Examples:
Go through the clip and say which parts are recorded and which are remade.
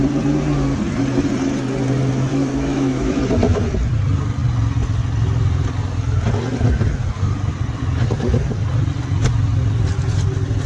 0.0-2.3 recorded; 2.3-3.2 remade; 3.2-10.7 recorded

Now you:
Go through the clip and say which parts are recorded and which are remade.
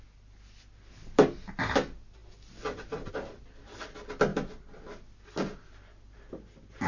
0.0-6.9 recorded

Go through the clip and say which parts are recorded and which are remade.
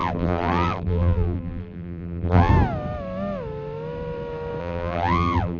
0.0-2.5 remade; 2.5-4.6 recorded; 4.6-5.6 remade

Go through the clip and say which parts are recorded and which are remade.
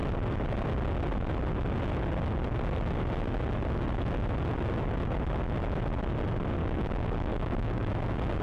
0.0-6.6 recorded; 6.6-7.9 remade; 7.9-8.4 recorded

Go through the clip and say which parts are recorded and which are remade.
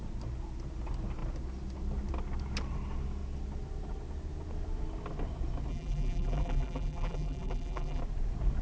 0.0-5.7 recorded; 5.7-8.0 remade; 8.0-8.6 recorded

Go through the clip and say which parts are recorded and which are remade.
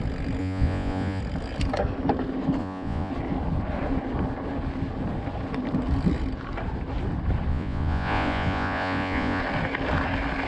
0.0-0.4 recorded; 0.4-1.2 remade; 1.2-2.6 recorded; 2.6-3.1 remade; 3.1-7.5 recorded; 7.5-9.4 remade; 9.4-10.5 recorded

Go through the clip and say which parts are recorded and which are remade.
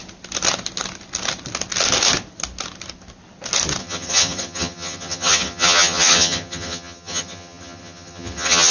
0.0-3.8 recorded; 3.8-8.7 remade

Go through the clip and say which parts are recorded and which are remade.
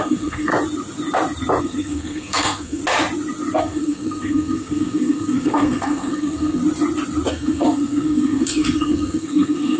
0.0-0.5 remade; 0.5-1.6 recorded; 1.6-2.8 remade; 2.8-3.6 recorded; 3.6-6.6 remade; 6.6-7.3 recorded; 7.3-9.8 remade